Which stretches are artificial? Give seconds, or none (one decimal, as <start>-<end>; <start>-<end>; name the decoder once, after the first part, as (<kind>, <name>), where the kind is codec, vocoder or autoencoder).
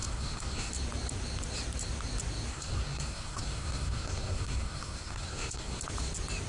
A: 0.0-0.7 (codec, SNAC); 2.5-5.8